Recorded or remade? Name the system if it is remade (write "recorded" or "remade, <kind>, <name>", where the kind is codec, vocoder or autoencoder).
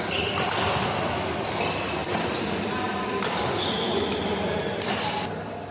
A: remade, vocoder, BigVGAN v2